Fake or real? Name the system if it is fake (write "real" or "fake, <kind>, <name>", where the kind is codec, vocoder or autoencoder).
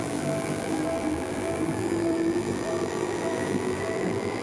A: fake, vocoder, BigVGAN v2